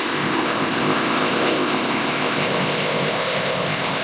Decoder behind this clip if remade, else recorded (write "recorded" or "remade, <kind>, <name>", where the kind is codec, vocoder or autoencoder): remade, codec, ZipCodec